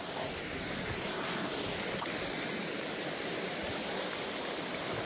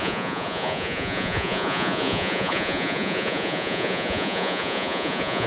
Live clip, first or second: first